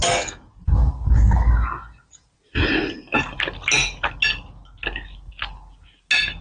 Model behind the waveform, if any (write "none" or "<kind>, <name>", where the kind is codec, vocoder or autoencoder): none